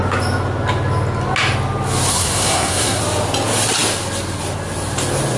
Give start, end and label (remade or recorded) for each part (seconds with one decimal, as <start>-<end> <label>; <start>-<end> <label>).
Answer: 0.0-2.1 recorded; 2.1-3.0 remade; 3.0-5.4 recorded